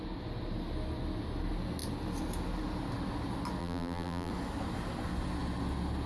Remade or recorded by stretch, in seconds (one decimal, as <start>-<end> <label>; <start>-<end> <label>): 0.0-3.6 recorded; 3.6-4.3 remade; 4.3-6.1 recorded